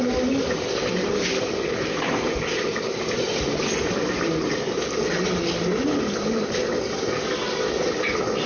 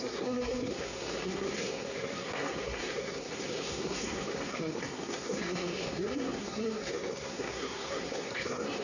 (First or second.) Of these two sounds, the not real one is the second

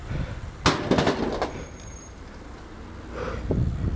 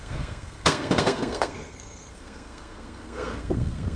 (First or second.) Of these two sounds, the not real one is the second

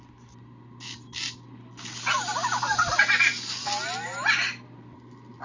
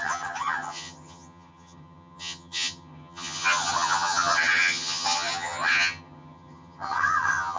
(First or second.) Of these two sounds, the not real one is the second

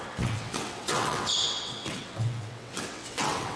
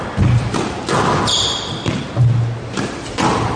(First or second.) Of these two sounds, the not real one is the first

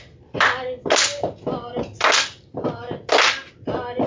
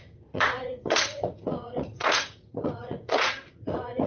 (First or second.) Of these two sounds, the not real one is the second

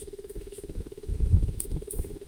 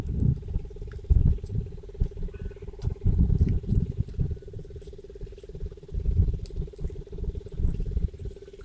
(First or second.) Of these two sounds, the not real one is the first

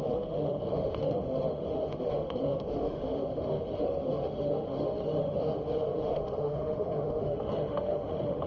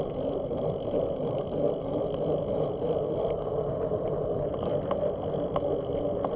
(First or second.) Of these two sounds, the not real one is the first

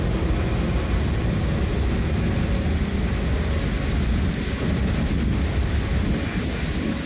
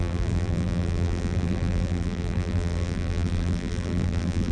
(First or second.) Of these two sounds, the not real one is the second